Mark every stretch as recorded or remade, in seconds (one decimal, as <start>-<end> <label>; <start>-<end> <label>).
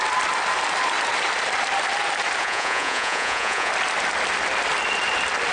0.0-2.4 recorded; 2.4-3.7 remade; 3.7-5.5 recorded